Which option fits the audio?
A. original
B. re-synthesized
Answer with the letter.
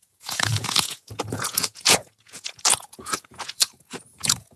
B